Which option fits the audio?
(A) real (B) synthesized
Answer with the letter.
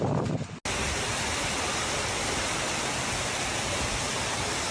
A